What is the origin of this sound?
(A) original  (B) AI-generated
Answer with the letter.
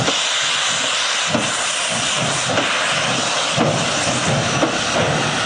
A